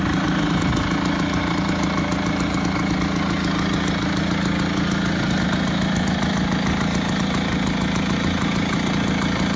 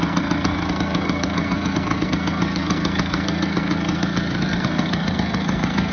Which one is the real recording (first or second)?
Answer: first